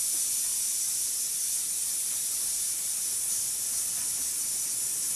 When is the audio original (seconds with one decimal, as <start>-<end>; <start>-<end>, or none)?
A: 0.0-0.5; 1.5-2.0; 3.3-5.2